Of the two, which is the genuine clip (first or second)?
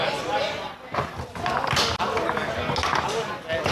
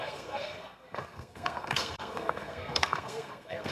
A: first